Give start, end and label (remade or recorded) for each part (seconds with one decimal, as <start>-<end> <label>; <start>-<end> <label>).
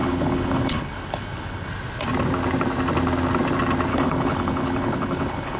0.0-1.7 remade; 1.7-3.9 recorded; 3.9-5.6 remade